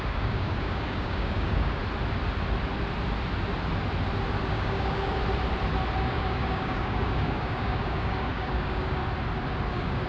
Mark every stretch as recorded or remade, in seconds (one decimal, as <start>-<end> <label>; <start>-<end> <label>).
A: 0.0-1.8 remade; 1.8-4.5 recorded; 4.5-5.2 remade; 5.2-6.0 recorded; 6.0-9.0 remade; 9.0-9.7 recorded; 9.7-10.1 remade